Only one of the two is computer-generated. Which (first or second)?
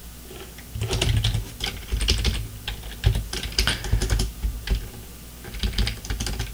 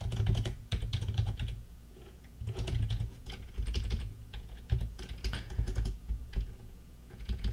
second